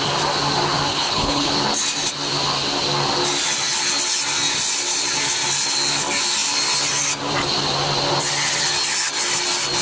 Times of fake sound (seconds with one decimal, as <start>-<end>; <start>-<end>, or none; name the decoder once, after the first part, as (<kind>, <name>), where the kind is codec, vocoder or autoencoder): 0.9-1.5 (codec, HILCodec)